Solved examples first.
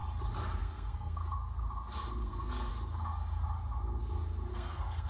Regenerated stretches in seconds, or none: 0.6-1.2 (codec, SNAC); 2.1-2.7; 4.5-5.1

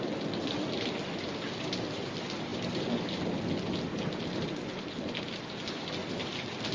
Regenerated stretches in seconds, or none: none

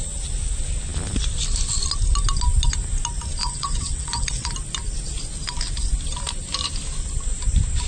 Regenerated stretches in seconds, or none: 3.4-4.5 (vocoder, WaveNeXt)

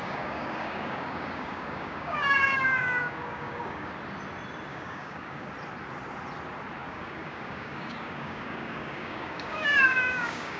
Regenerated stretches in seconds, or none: 0.0-3.9 (codec, DAC); 4.7-5.5; 6.8-10.6